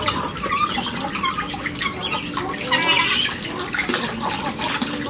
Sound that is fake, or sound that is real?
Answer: real